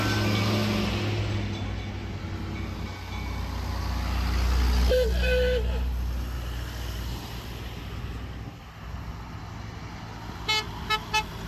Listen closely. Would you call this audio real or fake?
real